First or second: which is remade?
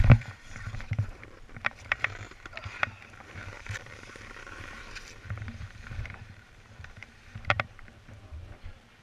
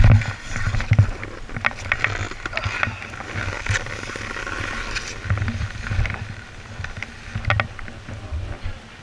first